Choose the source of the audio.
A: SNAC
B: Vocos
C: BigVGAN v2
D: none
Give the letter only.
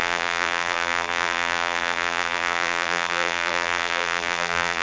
C